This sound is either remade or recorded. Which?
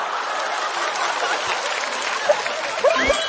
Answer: recorded